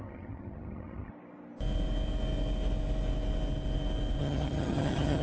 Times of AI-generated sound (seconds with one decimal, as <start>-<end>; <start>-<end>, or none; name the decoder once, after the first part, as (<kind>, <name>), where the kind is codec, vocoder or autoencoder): 0.0-1.1 (vocoder, HiFi-GAN); 4.2-5.2